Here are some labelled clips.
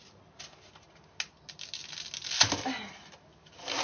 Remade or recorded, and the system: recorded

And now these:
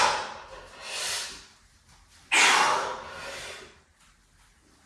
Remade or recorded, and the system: recorded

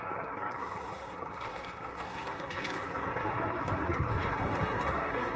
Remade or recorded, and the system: remade, codec, SNAC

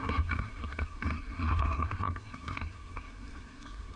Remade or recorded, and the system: remade, codec, SNAC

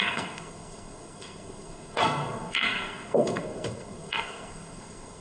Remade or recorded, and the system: remade, codec, SNAC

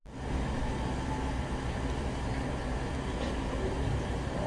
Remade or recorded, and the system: recorded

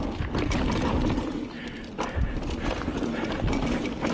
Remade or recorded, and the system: recorded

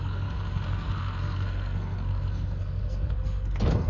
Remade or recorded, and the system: remade, codec, SNAC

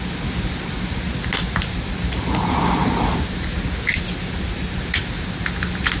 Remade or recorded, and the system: recorded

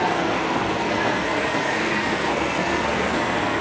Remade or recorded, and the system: remade, codec, SNAC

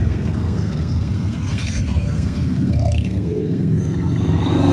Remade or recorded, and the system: remade, codec, SNAC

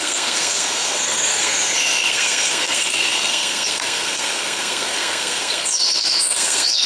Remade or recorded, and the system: remade, codec, SNAC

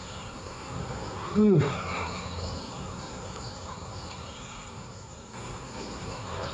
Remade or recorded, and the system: remade, codec, SNAC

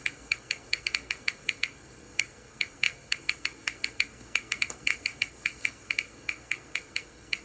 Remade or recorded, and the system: remade, codec, SNAC